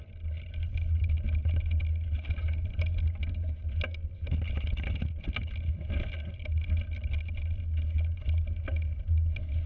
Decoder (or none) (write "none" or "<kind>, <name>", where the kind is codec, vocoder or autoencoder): none